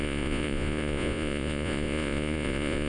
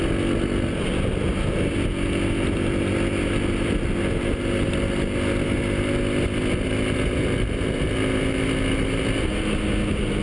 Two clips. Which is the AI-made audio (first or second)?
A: first